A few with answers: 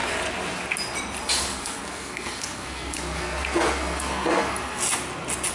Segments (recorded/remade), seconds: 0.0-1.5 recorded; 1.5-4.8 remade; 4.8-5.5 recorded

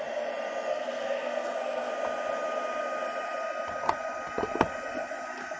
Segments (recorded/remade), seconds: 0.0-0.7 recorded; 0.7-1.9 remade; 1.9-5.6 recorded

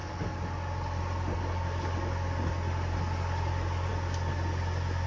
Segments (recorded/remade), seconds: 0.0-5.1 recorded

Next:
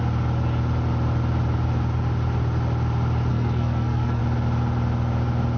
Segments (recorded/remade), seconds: 0.0-3.3 recorded; 3.3-4.2 remade; 4.2-5.6 recorded

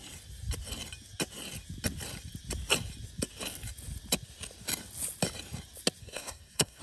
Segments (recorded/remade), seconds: 0.0-6.0 recorded; 6.0-6.8 remade

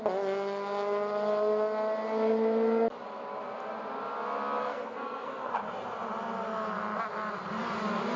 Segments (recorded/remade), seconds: 0.0-4.6 recorded; 4.6-5.5 remade; 5.5-8.2 recorded